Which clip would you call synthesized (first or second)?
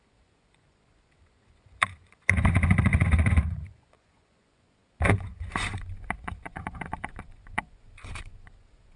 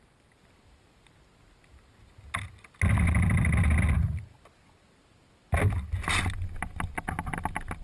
first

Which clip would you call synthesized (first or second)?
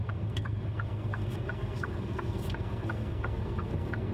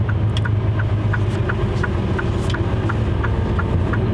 first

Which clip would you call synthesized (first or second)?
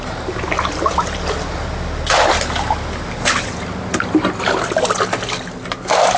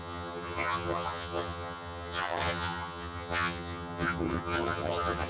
second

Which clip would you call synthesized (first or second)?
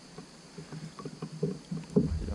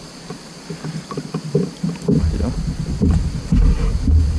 second